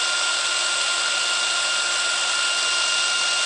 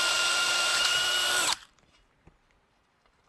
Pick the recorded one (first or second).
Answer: first